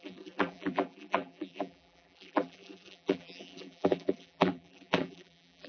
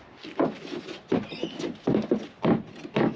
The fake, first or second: first